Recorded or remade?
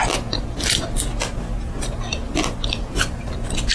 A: recorded